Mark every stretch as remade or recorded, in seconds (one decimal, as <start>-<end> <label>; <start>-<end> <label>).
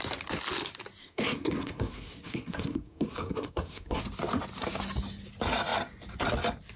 0.0-1.0 recorded; 1.0-4.0 remade; 4.0-6.8 recorded